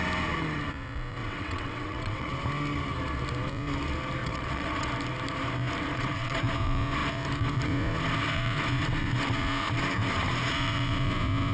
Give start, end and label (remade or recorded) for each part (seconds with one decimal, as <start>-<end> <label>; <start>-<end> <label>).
0.0-1.2 recorded; 1.2-2.3 remade; 2.3-4.2 recorded; 4.2-4.9 remade; 4.9-5.9 recorded; 5.9-6.4 remade; 6.4-11.5 recorded